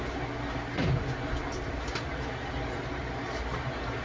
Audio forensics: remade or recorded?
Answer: remade